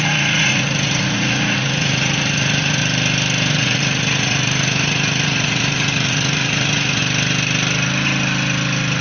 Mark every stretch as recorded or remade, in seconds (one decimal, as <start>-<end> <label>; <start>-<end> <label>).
0.0-2.8 remade; 2.8-3.5 recorded; 3.5-7.0 remade; 7.0-9.0 recorded